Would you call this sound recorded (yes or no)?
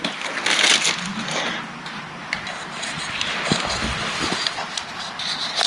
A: yes